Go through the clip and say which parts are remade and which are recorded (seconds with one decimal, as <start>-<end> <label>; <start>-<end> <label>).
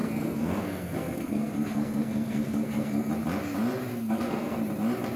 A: 0.0-3.1 remade; 3.1-3.9 recorded; 3.9-4.6 remade; 4.6-5.2 recorded